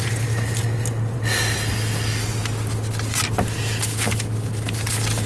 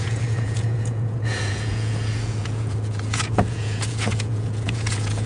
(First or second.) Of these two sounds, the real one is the first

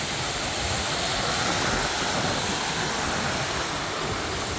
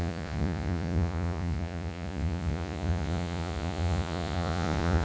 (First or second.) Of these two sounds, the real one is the first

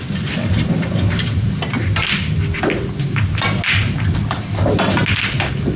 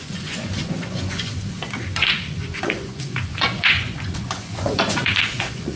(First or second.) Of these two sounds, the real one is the first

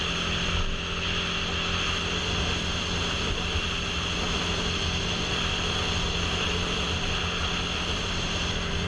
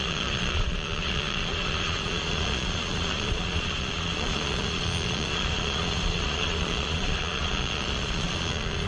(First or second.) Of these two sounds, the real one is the first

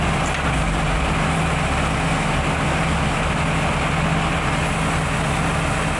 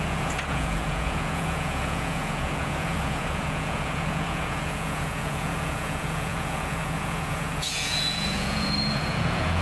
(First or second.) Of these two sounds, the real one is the first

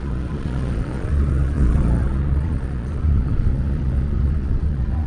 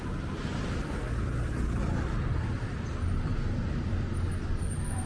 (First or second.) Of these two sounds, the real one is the second